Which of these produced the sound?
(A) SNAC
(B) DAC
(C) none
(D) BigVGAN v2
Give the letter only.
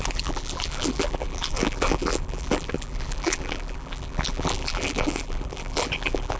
D